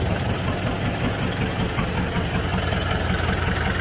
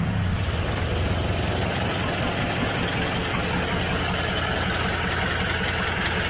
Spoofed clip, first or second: first